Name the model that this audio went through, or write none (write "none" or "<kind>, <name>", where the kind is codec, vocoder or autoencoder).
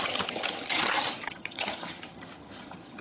vocoder, HiFi-GAN